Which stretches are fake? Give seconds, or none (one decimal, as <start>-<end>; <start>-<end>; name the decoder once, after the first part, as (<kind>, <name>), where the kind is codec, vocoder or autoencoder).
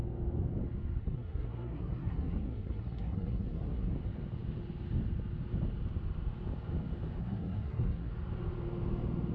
1.0-3.9 (codec, SNAC); 7.2-8.1